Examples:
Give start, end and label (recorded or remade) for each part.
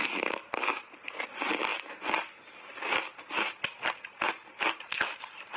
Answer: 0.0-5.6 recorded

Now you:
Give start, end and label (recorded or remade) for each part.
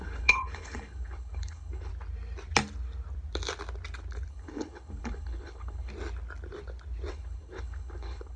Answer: 0.0-1.9 remade; 1.9-4.3 recorded; 4.3-5.9 remade; 5.9-7.1 recorded; 7.1-8.4 remade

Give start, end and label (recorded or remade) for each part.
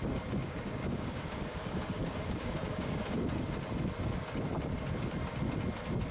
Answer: 0.0-0.4 recorded; 0.4-3.1 remade; 3.1-6.1 recorded